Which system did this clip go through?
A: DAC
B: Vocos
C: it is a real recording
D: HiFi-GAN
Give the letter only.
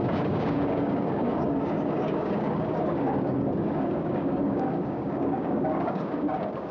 A